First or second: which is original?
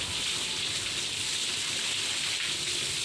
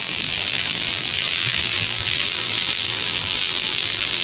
first